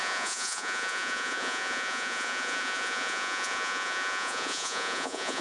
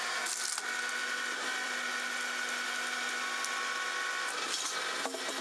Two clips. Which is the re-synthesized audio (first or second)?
first